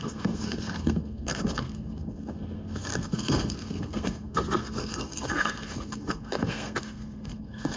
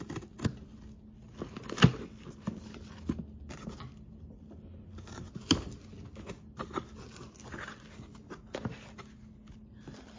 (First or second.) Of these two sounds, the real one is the second